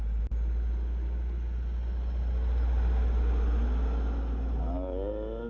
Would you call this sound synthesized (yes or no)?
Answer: no